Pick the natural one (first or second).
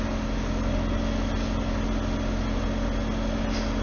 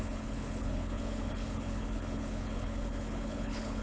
first